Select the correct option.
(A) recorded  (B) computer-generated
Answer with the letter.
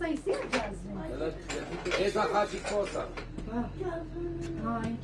A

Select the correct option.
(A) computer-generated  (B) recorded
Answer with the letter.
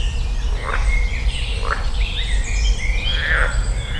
A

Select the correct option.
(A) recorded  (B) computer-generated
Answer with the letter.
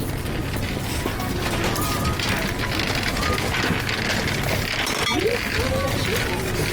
A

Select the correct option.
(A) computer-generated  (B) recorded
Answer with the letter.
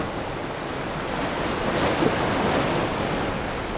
B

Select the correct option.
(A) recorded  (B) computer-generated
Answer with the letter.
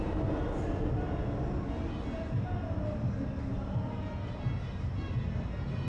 A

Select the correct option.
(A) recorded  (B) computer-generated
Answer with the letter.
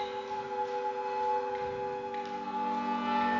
A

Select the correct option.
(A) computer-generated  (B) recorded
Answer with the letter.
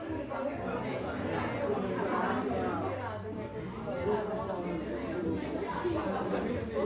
B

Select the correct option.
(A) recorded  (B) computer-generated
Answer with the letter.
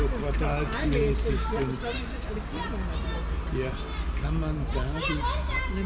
A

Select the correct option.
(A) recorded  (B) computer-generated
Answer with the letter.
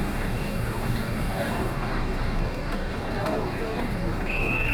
B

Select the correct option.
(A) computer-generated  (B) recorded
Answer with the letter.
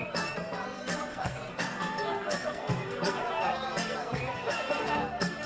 A